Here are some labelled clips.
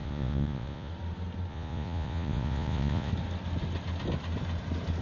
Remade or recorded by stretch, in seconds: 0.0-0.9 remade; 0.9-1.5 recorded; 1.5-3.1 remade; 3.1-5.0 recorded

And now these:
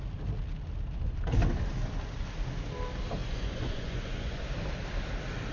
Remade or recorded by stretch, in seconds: 0.0-3.2 recorded; 3.2-4.4 remade; 4.4-5.5 recorded

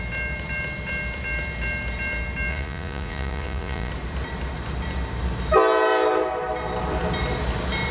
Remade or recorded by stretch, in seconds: 0.0-2.5 recorded; 2.5-3.9 remade; 3.9-7.9 recorded

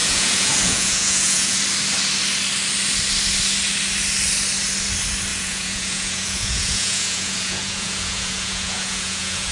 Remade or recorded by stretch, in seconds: 0.0-1.6 remade; 1.6-5.3 recorded; 5.3-9.5 remade